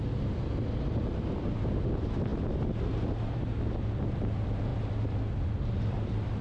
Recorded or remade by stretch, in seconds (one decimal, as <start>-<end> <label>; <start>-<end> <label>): 0.0-2.3 remade; 2.3-4.1 recorded; 4.1-4.7 remade; 4.7-5.3 recorded; 5.3-6.4 remade